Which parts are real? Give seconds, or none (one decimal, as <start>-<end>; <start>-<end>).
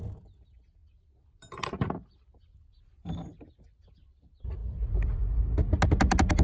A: 0.0-4.6; 5.2-6.4